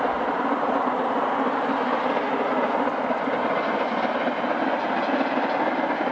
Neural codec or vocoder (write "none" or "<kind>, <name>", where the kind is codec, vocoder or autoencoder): none